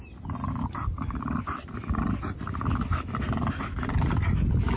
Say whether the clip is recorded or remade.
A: recorded